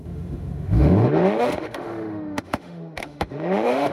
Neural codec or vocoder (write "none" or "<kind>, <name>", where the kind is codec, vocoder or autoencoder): autoencoder, DAC-VAE